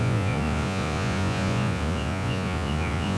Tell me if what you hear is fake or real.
fake